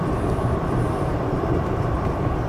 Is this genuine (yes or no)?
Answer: no